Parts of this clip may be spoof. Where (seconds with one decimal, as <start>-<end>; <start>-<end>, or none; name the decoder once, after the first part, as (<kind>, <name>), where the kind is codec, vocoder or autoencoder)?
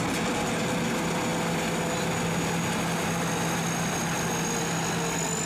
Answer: none